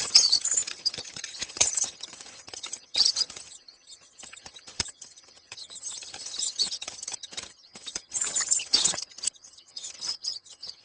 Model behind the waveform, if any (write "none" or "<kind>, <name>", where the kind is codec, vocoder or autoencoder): vocoder, HiFi-GAN